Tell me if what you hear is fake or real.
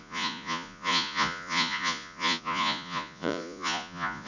fake